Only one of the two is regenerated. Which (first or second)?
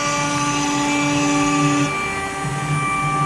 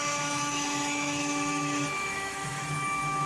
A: second